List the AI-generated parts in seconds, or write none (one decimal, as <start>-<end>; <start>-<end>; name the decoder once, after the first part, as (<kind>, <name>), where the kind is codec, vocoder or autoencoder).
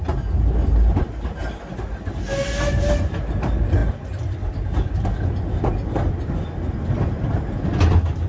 none